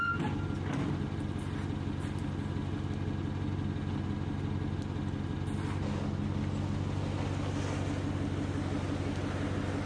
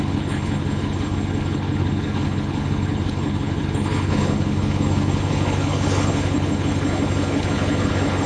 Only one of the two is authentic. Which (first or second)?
first